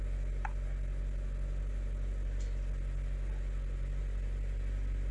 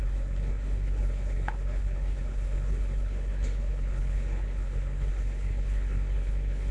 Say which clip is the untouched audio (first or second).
first